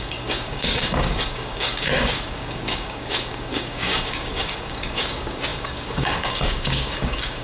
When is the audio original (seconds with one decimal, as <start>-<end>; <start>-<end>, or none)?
none